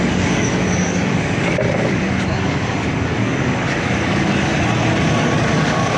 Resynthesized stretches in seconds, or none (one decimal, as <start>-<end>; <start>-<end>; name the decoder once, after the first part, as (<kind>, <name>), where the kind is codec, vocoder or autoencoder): 0.0-4.5 (codec, DAC); 5.2-6.0